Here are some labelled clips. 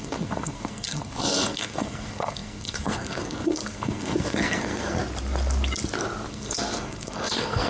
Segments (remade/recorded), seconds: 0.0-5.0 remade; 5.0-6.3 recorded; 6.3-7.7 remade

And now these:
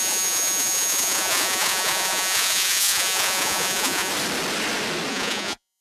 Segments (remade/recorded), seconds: 0.0-4.1 remade; 4.1-5.1 recorded; 5.1-5.8 remade

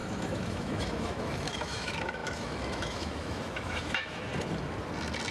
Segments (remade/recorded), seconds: 0.0-4.3 remade; 4.3-5.3 recorded

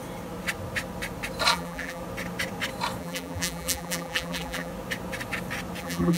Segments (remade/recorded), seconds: 0.0-1.5 recorded; 1.5-2.0 remade; 2.0-3.0 recorded; 3.0-4.7 remade; 4.7-5.8 recorded; 5.8-6.2 remade